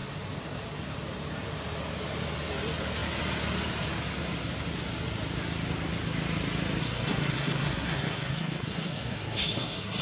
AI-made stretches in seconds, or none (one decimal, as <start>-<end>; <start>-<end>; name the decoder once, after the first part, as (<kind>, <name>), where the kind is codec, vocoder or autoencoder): 6.8-10.0 (codec, SNAC)